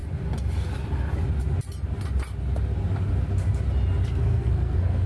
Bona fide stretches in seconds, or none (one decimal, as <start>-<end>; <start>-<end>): 0.0-4.0